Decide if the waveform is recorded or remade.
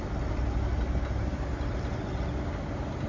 recorded